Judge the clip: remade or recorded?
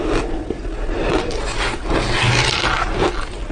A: recorded